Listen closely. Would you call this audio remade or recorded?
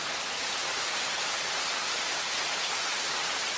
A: recorded